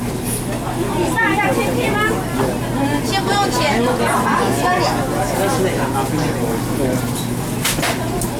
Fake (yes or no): no